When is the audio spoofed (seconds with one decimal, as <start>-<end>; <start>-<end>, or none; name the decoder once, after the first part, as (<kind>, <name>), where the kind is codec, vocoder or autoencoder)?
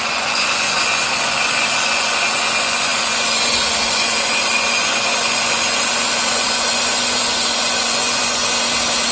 0.0-8.4 (vocoder, Vocos)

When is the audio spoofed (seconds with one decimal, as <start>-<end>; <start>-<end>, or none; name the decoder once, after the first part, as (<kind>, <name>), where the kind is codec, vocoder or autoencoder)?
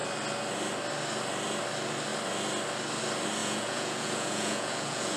3.4-5.2 (vocoder, Vocos)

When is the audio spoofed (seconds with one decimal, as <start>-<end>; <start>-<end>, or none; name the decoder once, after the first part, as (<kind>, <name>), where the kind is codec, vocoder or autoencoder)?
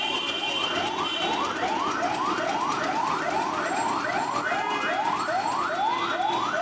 none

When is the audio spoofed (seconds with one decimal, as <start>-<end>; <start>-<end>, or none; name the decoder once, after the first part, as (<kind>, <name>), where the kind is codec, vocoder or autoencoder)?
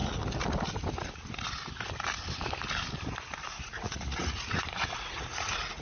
3.5-5.8 (vocoder, Vocos)